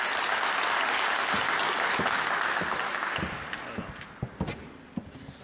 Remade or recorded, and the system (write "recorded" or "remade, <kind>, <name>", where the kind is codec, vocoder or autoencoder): recorded